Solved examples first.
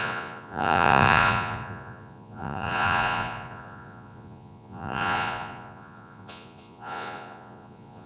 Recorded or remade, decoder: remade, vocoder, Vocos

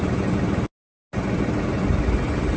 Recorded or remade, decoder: recorded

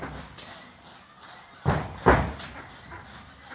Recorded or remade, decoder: recorded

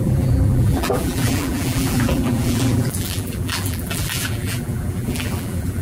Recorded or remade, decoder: remade, vocoder, BigVGAN v2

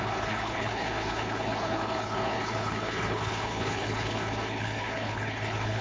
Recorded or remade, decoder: remade, codec, HILCodec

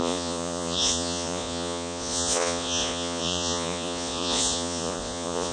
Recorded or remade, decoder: remade, vocoder, Vocos